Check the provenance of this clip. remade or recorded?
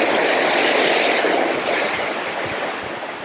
recorded